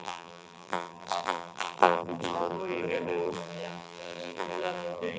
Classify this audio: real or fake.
fake